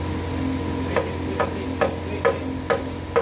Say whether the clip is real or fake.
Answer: real